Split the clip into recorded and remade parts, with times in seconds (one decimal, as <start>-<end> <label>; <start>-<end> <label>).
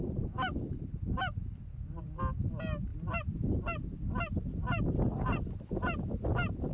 0.0-6.7 recorded